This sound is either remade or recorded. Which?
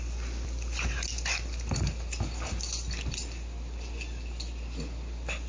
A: recorded